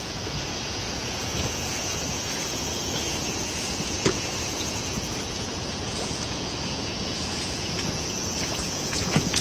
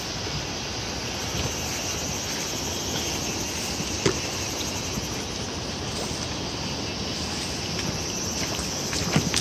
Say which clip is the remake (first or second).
first